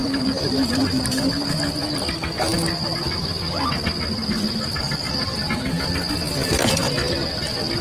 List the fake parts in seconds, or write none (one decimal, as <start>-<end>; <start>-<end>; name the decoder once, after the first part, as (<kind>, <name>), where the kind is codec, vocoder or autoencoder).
0.0-1.6 (vocoder, BigVGAN v2)